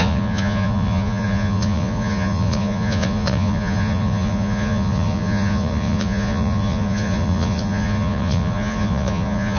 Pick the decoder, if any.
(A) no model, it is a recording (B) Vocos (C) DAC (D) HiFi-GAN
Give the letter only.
B